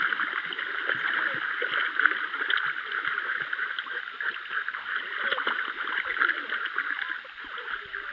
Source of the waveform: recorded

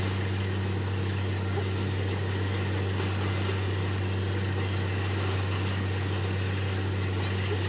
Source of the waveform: recorded